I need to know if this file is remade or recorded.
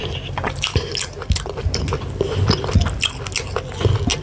recorded